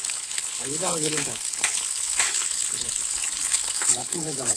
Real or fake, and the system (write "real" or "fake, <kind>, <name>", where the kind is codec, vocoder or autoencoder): fake, codec, HILCodec